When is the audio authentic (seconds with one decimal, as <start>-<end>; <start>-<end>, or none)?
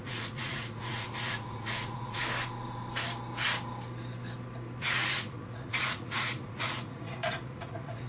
2.2-4.8